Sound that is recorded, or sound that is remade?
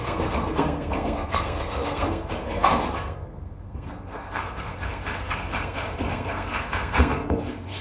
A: remade